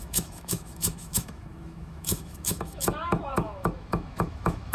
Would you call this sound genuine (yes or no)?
no